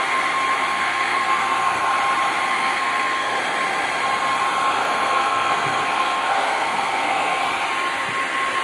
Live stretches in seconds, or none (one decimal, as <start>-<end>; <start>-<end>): 0.0-0.7; 1.9-2.5; 3.3-4.8; 7.4-8.6